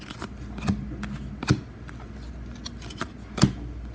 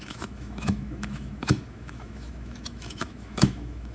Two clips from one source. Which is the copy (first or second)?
second